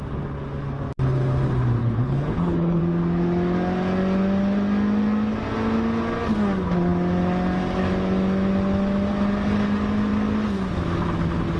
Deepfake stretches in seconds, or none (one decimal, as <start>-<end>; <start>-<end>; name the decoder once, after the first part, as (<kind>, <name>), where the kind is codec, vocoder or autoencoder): 1.8-2.8 (codec, HILCodec)